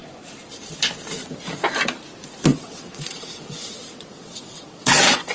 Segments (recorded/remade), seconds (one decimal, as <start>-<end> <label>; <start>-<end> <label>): 0.0-2.5 recorded; 2.5-5.3 remade